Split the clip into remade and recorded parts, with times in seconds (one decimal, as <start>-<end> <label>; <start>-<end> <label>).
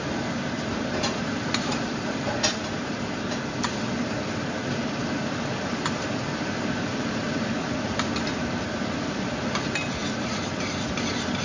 0.0-11.4 recorded